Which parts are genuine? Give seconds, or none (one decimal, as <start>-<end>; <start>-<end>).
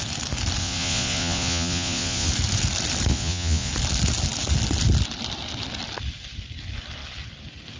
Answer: 0.0-0.6; 2.3-3.1; 3.7-7.8